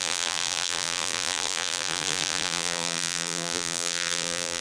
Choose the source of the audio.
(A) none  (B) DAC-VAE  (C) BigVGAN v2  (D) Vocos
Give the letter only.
C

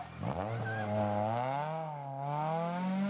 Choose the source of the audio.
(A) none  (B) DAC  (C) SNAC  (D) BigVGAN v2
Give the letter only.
A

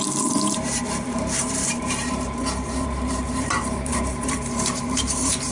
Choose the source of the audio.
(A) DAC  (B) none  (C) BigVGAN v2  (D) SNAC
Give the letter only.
C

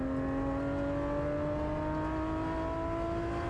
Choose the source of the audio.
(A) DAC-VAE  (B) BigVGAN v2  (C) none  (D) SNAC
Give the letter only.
C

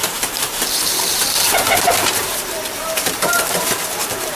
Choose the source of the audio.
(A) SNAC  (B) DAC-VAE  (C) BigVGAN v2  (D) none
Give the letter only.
C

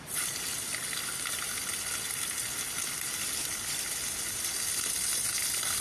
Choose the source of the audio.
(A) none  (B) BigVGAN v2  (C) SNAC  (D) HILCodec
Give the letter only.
A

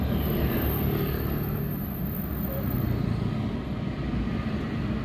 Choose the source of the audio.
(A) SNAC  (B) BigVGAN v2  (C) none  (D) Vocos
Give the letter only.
C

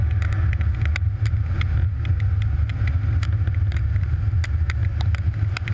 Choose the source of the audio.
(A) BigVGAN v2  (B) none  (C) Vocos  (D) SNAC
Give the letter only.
B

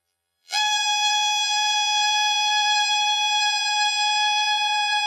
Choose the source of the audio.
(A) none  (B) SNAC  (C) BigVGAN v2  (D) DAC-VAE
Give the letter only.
C